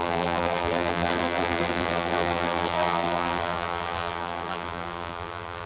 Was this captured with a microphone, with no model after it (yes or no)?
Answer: no